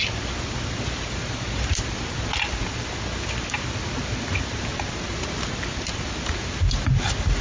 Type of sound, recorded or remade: recorded